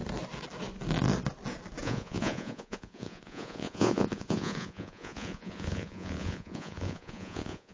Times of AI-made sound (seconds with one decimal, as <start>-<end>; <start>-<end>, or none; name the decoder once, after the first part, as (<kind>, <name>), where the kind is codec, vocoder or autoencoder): 1.8-7.7 (vocoder, Vocos)